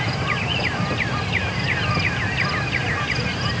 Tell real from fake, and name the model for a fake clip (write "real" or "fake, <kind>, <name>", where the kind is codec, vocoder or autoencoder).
real